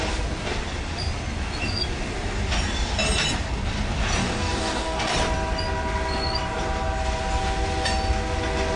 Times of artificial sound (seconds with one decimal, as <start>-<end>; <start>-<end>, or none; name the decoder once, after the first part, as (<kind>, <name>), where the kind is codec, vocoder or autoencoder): 4.2-5.1 (codec, DAC)